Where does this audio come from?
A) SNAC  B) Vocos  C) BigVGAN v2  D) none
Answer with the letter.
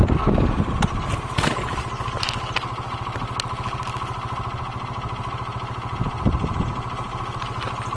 D